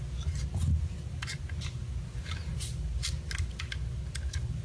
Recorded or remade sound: recorded